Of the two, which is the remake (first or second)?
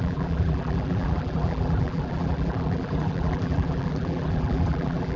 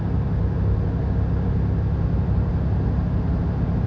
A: first